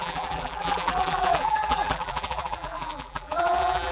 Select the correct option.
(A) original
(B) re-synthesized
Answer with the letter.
B